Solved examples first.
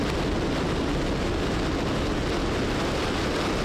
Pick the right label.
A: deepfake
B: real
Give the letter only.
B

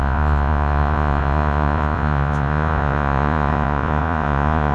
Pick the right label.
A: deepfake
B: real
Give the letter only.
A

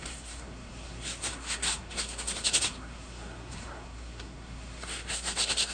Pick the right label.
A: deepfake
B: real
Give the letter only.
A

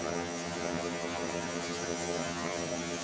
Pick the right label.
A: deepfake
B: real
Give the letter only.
A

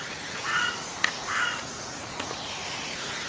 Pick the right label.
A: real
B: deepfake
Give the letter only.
B